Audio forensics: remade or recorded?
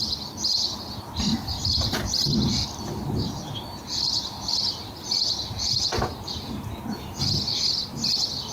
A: recorded